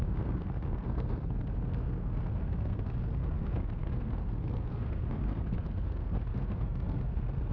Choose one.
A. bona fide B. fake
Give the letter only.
B